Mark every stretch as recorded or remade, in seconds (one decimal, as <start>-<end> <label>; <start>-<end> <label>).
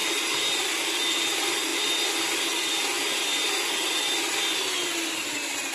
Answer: 0.0-5.7 recorded